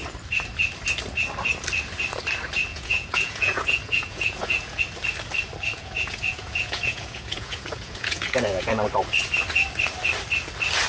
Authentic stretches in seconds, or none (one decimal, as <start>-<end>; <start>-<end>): 0.0-2.7; 4.8-5.7; 8.7-10.9